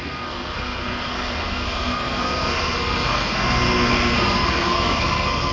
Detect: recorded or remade remade